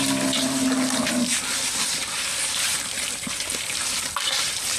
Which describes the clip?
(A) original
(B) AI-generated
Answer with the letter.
B